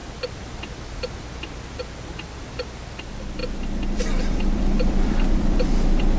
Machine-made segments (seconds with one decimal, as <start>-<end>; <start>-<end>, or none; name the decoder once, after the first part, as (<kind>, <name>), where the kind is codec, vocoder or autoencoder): 0.0-6.2 (vocoder, BigVGAN v2)